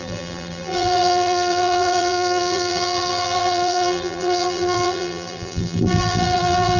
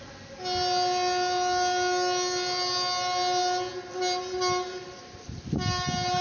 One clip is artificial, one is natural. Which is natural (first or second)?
second